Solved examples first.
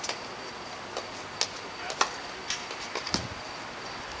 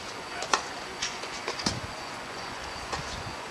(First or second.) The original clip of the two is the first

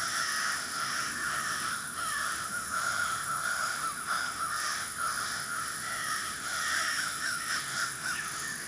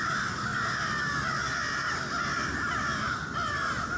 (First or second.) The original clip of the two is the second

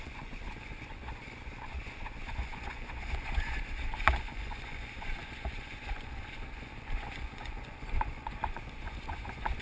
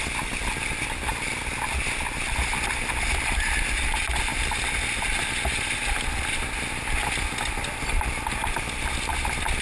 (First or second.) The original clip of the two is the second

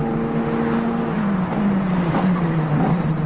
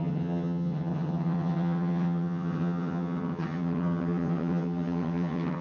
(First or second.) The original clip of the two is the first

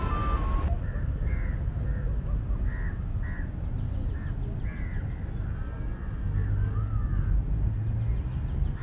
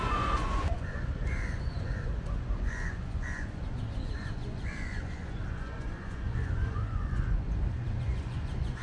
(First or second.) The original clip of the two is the first